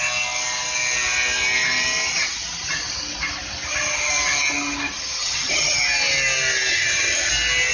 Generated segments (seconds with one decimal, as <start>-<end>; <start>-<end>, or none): 5.2-5.8; 6.7-7.3